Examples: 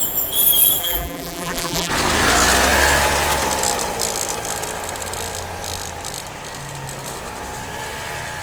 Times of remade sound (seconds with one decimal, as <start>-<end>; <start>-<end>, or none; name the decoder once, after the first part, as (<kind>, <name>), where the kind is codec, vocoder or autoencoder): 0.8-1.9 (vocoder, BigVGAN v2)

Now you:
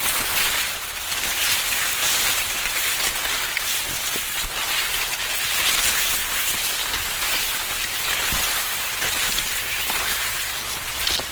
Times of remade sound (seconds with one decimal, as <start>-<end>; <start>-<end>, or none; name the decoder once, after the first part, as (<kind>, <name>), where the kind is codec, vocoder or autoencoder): 6.2-11.3 (vocoder, BigVGAN v2)

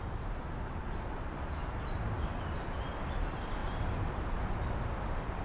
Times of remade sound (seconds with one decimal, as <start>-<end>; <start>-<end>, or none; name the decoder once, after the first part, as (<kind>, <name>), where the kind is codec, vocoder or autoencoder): 0.0-0.8 (vocoder, BigVGAN v2); 3.6-4.7